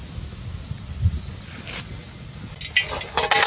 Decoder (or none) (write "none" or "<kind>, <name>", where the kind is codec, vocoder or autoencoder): none